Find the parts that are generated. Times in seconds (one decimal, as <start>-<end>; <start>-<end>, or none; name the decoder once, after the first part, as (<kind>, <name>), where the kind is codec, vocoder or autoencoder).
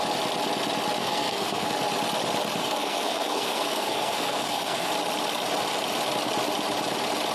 1.0-1.7 (codec, SNAC); 2.6-4.9